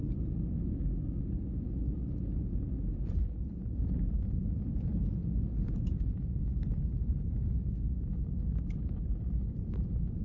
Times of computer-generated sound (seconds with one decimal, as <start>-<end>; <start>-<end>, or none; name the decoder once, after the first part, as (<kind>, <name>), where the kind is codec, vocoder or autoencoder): 2.9-4.4 (vocoder, BigVGAN v2); 5.2-10.2